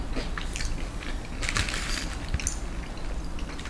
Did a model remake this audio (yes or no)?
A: no